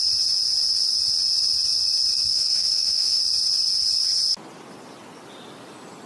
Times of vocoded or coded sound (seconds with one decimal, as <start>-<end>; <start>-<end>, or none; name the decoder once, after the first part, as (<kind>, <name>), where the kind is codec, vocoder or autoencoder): 2.3-3.2 (autoencoder, DAC-VAE)

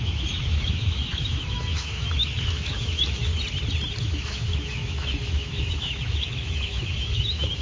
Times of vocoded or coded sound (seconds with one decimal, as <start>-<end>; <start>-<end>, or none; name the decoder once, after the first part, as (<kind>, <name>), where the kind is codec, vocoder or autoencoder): 0.0-3.3 (autoencoder, DAC-VAE); 4.0-7.6

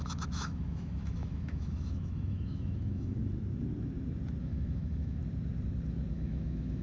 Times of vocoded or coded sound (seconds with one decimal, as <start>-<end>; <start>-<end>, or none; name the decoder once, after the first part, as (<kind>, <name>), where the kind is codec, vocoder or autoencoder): 0.0-3.2 (autoencoder, DAC-VAE); 4.4-5.2; 6.1-6.8

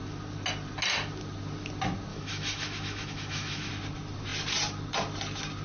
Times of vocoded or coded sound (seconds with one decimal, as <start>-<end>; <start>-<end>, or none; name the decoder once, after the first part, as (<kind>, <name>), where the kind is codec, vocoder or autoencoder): 2.1-3.7 (autoencoder, DAC-VAE)